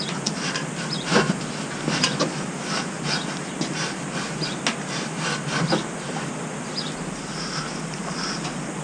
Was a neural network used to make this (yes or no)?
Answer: no